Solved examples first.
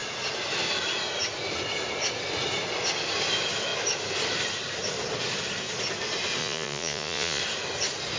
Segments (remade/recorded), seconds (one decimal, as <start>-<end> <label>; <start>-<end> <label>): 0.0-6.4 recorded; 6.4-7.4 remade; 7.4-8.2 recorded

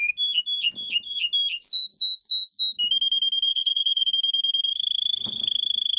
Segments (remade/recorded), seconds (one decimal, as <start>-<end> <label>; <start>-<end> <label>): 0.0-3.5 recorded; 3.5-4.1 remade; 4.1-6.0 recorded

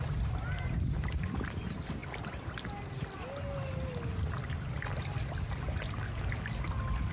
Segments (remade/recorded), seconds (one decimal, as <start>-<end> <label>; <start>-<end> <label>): 0.0-7.1 recorded

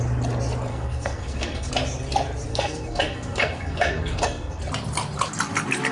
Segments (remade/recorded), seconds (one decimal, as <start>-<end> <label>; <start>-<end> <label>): 0.0-0.7 recorded; 0.7-1.7 remade; 1.7-2.5 recorded; 2.5-4.6 remade; 4.6-5.9 recorded

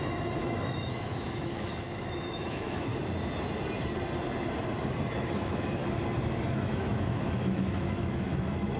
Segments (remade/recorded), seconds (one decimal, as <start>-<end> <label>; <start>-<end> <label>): 0.0-2.9 remade; 2.9-4.9 recorded; 4.9-5.8 remade; 5.8-6.5 recorded; 6.5-8.8 remade